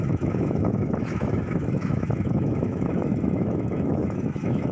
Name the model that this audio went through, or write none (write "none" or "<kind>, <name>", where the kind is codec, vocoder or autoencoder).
autoencoder, DAC-VAE